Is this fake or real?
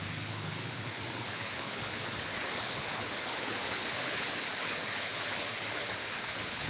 fake